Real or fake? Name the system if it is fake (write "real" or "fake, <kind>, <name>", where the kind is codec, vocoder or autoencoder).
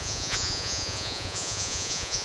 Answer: fake, vocoder, Vocos